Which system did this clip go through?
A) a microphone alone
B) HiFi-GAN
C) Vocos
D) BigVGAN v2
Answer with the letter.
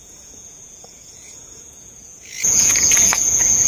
C